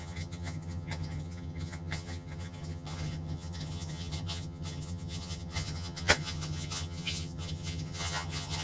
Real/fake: fake